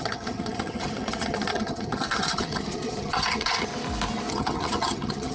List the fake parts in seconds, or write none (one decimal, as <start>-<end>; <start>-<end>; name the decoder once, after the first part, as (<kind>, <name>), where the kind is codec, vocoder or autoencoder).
0.0-3.7 (vocoder, HiFi-GAN); 4.3-5.3